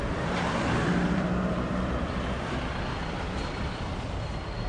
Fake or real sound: fake